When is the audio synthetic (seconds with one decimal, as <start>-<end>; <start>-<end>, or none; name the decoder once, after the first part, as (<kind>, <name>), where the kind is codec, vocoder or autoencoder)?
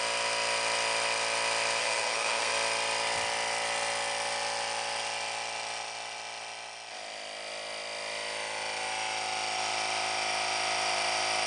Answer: 1.8-2.5 (codec, SNAC)